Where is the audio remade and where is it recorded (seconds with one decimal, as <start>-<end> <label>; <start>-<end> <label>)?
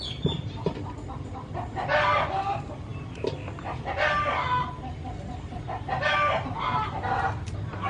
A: 0.0-7.9 recorded